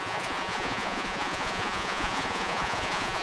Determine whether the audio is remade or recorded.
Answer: remade